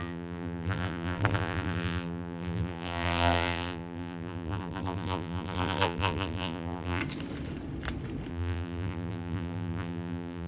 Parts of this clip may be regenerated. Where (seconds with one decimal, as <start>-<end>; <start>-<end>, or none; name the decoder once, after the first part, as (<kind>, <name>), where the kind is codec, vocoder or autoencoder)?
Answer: 0.0-7.0 (vocoder, BigVGAN v2); 8.3-10.5